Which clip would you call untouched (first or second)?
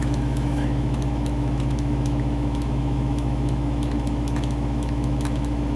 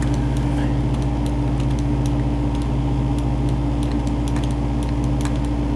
second